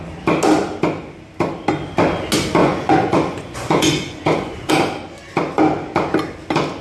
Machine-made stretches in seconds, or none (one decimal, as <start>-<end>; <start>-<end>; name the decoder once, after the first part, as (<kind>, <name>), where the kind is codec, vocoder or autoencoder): 2.6-4.7 (vocoder, Vocos)